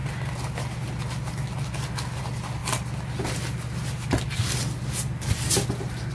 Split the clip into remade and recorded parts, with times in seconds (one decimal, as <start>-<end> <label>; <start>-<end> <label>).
0.0-6.1 recorded